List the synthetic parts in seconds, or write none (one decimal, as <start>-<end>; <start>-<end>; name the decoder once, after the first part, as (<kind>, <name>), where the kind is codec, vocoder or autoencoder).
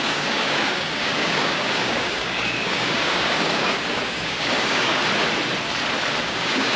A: 0.0-5.0 (codec, DAC); 6.2-6.8